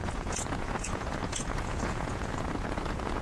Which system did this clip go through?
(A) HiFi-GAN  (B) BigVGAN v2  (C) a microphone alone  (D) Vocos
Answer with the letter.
D